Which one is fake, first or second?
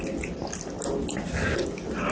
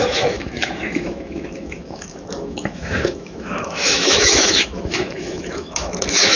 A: second